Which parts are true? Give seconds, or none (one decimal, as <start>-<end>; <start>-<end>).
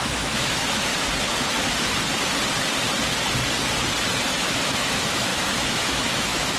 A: 0.9-4.3